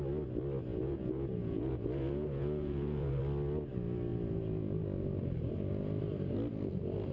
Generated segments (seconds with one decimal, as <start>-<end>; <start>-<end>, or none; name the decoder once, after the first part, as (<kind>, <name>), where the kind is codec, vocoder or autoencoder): 0.7-3.2 (vocoder, Vocos)